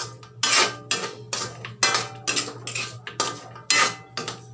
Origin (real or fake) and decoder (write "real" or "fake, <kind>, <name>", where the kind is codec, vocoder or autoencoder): real